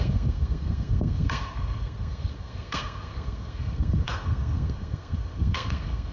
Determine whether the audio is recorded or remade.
remade